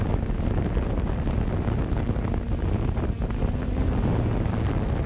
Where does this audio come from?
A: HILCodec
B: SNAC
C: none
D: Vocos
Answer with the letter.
C